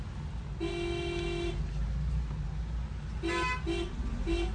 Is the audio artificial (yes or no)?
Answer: no